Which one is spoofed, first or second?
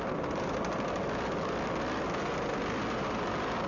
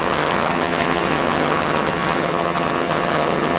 second